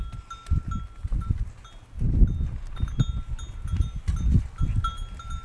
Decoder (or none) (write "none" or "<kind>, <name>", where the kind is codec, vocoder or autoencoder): none